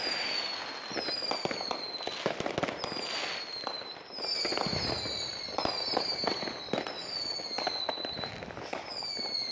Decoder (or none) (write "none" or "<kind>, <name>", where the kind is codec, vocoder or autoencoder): none